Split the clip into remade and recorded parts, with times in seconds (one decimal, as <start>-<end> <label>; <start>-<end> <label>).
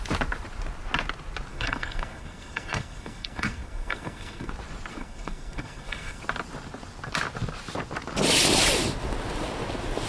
0.0-1.5 recorded; 1.5-4.5 remade; 4.5-4.9 recorded; 4.9-6.2 remade; 6.2-10.1 recorded